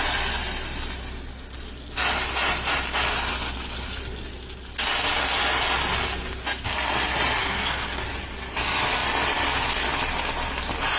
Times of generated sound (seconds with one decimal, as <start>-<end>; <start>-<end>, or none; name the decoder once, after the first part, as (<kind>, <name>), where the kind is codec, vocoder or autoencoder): 7.4-8.0 (codec, SNAC)